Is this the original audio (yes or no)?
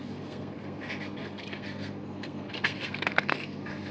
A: no